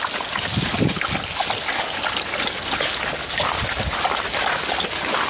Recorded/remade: recorded